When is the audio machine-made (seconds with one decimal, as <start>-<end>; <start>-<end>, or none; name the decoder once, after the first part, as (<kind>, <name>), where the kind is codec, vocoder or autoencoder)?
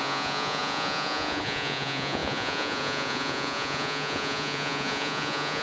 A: 0.0-5.6 (vocoder, Vocos)